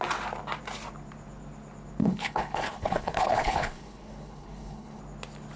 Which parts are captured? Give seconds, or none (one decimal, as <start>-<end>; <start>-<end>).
0.0-2.0; 5.0-5.6